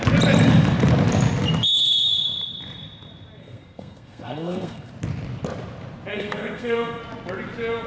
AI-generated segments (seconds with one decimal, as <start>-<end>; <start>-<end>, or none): 3.4-4.9; 6.1-7.0

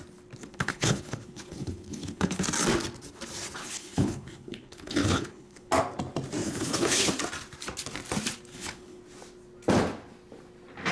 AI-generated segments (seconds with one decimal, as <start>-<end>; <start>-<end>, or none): 0.4-2.4; 3.6-5.7; 6.4-7.1; 8.5-9.0

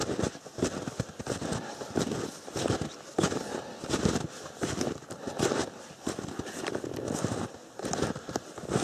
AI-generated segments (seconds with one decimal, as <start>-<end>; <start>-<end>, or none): none

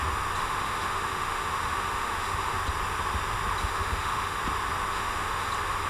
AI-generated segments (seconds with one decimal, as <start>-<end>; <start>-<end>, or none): 0.4-2.6; 3.6-4.4; 4.9-5.5

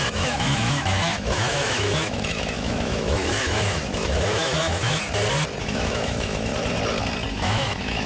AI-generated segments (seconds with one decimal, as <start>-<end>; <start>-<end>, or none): 0.0-5.0; 5.6-6.5; 7.3-8.1

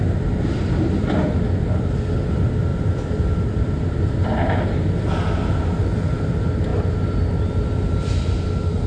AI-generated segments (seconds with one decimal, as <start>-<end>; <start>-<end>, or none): 2.7-5.4